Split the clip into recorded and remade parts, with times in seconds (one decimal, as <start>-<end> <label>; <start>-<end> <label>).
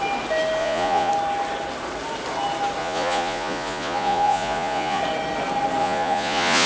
0.0-0.6 recorded; 0.6-1.1 remade; 1.1-2.8 recorded; 2.8-5.0 remade; 5.0-5.8 recorded; 5.8-6.7 remade